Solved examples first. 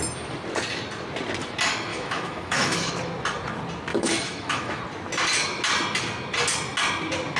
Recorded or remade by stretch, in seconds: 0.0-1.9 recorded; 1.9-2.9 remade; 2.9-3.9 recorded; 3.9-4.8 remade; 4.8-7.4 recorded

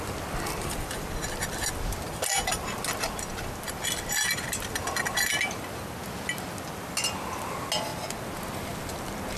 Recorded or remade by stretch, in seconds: 0.0-9.4 recorded

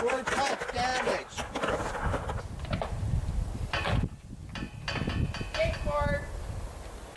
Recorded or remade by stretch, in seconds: 0.0-7.2 recorded